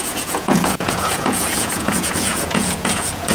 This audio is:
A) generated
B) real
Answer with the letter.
A